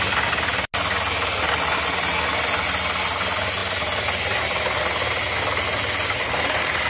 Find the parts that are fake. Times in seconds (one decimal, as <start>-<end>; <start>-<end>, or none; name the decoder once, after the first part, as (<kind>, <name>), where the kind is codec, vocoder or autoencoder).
none